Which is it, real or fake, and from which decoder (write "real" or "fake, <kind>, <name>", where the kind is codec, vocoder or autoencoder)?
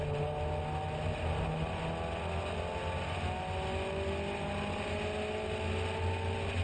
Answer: real